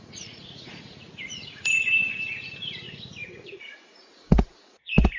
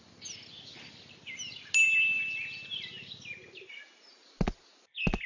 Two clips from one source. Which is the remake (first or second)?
first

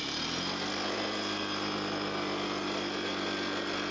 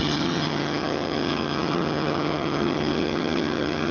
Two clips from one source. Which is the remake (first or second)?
second